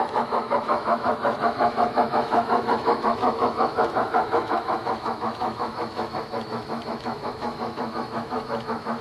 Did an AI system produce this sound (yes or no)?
yes